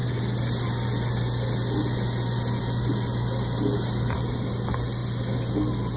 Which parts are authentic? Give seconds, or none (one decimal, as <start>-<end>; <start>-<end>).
0.0-6.0